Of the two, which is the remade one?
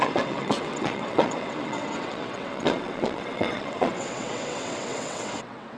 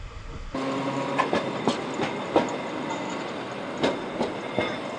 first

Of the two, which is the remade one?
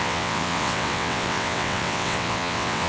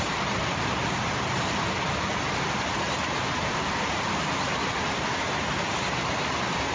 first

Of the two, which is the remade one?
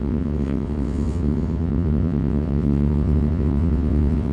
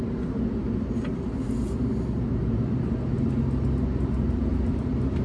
first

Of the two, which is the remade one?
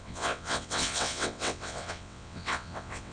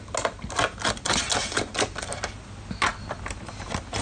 first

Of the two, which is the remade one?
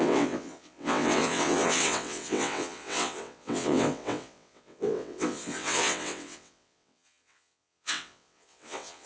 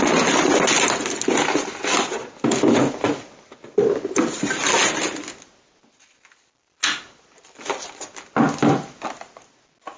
first